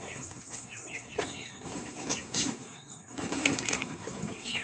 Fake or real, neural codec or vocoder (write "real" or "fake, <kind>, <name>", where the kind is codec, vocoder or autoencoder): fake, codec, SNAC